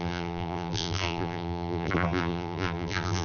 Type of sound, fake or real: fake